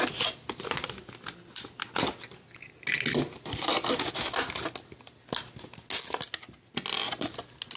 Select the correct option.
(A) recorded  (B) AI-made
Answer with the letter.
A